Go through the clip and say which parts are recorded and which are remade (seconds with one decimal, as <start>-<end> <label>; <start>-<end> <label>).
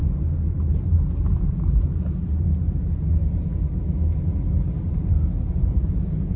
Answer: 0.0-6.4 recorded